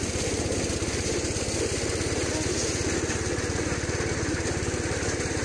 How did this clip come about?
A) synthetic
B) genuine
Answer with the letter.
B